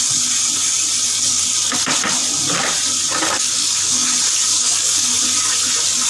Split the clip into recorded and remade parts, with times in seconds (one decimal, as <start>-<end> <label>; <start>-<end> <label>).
0.0-3.4 recorded; 3.4-4.1 remade; 4.1-4.5 recorded; 4.5-5.1 remade; 5.1-6.1 recorded